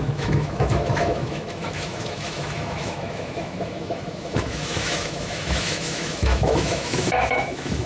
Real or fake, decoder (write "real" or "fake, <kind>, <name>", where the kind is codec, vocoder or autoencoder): fake, autoencoder, DAC-VAE